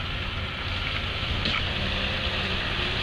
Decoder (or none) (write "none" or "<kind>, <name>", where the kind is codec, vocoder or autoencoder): none